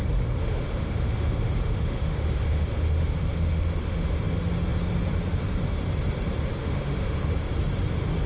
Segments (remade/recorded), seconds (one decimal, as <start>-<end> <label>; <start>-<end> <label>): 0.0-0.4 recorded; 0.4-4.2 remade; 4.2-6.6 recorded; 6.6-7.3 remade; 7.3-8.3 recorded